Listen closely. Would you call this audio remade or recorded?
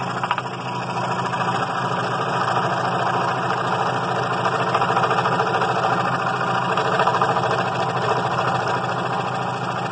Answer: recorded